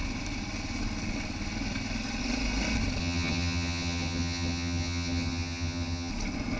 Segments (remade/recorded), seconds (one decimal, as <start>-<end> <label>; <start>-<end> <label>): 0.0-3.0 recorded; 3.0-6.1 remade; 6.1-6.6 recorded